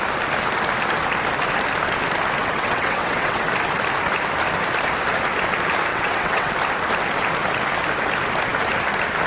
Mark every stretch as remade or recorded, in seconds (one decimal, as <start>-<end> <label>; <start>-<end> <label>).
0.0-2.4 recorded; 2.4-3.5 remade; 3.5-5.9 recorded; 5.9-6.5 remade; 6.5-9.3 recorded